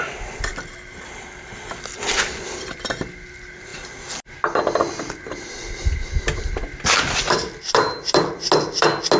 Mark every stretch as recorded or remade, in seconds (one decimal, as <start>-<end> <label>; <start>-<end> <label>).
0.0-9.2 recorded